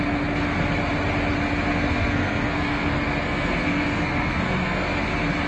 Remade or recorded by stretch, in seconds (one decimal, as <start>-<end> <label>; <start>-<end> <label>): 0.0-1.7 recorded; 1.7-5.0 remade; 5.0-5.5 recorded